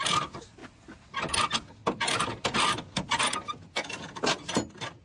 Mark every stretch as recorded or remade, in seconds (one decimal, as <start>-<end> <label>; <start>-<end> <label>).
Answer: 0.0-5.0 recorded